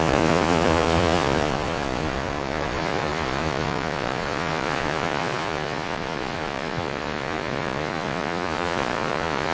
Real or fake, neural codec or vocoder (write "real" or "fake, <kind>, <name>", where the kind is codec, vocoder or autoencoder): fake, vocoder, Vocos